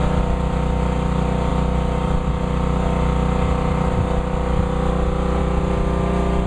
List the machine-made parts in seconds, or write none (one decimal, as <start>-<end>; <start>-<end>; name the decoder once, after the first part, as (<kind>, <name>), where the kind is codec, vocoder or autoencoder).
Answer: none